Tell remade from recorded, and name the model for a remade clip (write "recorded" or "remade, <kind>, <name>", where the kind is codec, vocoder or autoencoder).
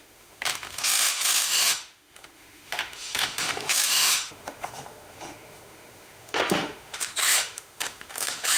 remade, autoencoder, DAC-VAE